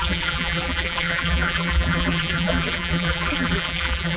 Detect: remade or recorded remade